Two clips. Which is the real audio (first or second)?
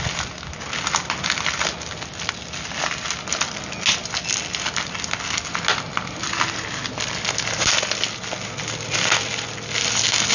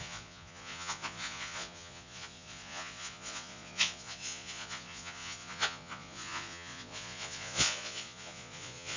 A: first